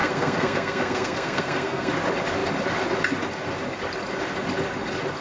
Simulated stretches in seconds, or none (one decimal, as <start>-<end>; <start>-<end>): 0.0-1.9